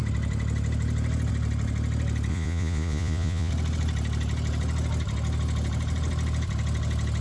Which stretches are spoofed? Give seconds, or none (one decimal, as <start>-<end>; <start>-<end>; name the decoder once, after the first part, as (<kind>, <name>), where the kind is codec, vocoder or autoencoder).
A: 2.3-3.5 (vocoder, Vocos)